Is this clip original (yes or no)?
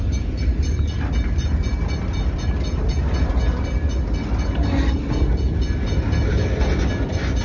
yes